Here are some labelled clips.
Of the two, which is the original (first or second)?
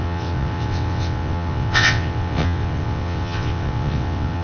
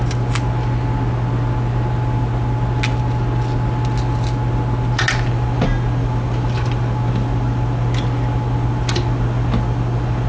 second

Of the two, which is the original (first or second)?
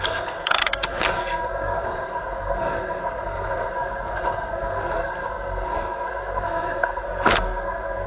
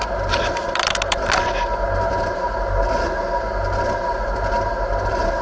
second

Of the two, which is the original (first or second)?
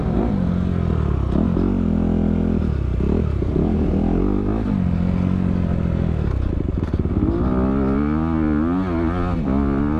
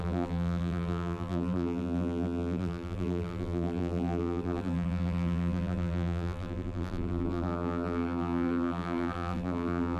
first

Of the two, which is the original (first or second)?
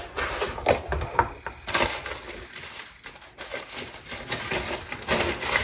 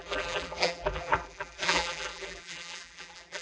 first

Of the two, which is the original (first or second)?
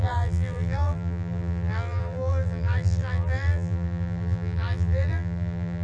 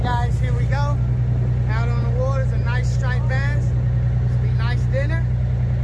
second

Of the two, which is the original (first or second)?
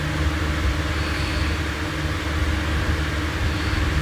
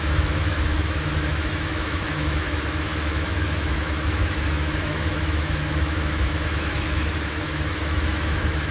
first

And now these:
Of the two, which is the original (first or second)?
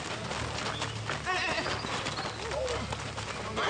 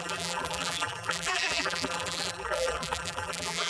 first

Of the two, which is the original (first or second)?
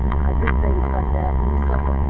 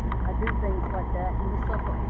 second